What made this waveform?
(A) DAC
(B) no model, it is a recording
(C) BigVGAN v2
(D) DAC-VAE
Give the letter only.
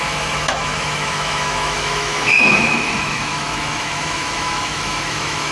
D